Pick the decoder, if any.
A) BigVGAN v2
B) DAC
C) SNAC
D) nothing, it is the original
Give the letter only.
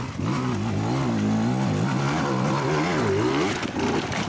D